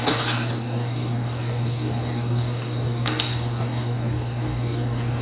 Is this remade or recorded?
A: remade